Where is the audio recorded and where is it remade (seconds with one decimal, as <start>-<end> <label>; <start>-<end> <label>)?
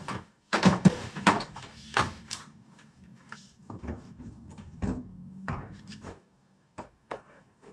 0.0-7.7 remade